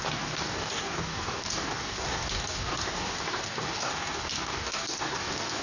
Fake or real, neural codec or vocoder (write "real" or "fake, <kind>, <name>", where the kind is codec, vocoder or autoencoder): fake, codec, DAC